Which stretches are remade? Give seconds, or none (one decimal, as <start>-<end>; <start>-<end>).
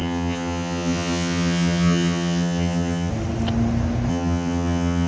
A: 0.0-3.1; 4.1-5.1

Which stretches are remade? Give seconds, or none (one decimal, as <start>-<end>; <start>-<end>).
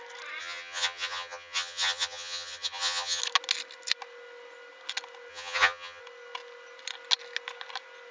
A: 0.4-3.2; 5.3-6.0